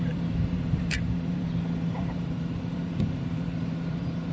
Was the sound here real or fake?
fake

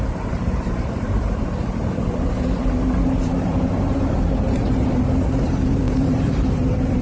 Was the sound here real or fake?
fake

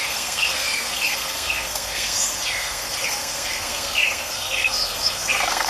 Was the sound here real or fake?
fake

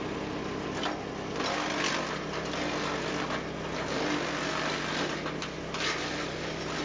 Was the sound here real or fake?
real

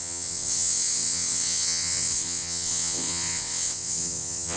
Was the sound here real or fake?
fake